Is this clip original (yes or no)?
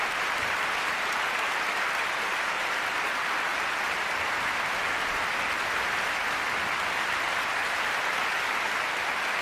yes